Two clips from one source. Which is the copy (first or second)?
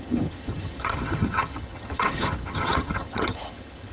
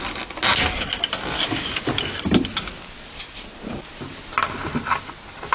first